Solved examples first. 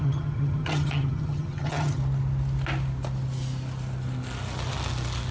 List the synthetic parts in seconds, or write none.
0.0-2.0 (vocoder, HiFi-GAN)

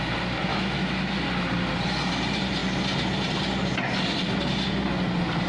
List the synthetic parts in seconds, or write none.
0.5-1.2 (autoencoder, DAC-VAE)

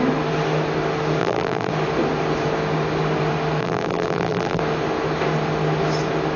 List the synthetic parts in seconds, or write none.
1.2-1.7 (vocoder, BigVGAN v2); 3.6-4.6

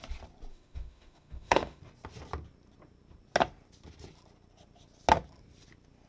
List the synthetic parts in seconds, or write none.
0.5-1.8 (autoencoder, DAC-VAE)

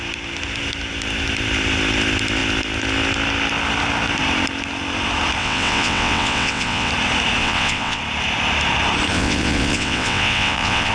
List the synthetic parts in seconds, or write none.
5.4-6.9 (vocoder, WaveNeXt); 7.4-8.0; 9.1-10.9

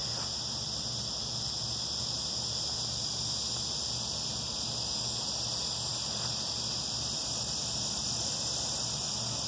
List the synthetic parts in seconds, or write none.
none

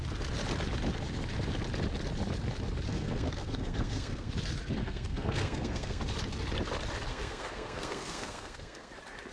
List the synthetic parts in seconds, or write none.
2.9-4.3 (codec, SNAC); 4.8-6.0; 7.1-8.9